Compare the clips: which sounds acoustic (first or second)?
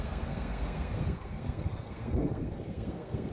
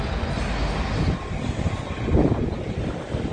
second